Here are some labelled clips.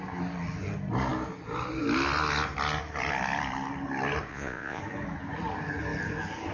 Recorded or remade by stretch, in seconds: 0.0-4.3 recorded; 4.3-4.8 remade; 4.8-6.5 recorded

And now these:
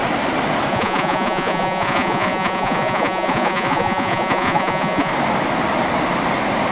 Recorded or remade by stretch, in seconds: 0.0-0.7 recorded; 0.7-5.1 remade; 5.1-6.7 recorded

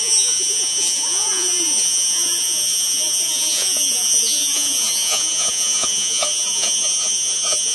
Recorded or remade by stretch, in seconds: 0.0-7.7 remade

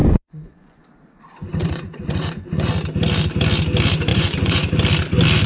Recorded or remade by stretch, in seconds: 0.0-0.8 remade; 0.8-1.6 recorded; 1.6-2.7 remade; 2.7-4.1 recorded; 4.1-4.7 remade; 4.7-5.5 recorded

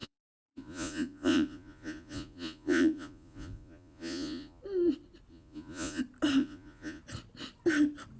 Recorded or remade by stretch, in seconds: 0.0-4.6 remade; 4.6-5.3 recorded; 5.3-6.0 remade; 6.0-6.4 recorded; 6.4-7.0 remade; 7.0-8.2 recorded